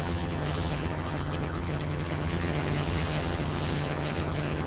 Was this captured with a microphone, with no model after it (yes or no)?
no